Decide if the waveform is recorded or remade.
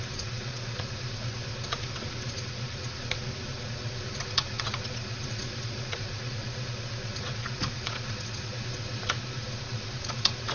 remade